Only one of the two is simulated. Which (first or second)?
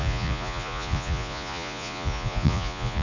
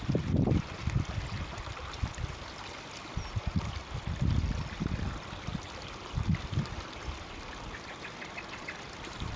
first